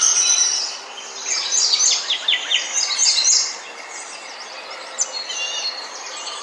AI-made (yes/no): no